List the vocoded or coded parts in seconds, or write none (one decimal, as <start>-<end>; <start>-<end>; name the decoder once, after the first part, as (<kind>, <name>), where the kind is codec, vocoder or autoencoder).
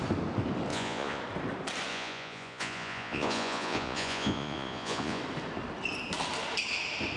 0.7-1.2 (vocoder, Vocos); 1.9-5.2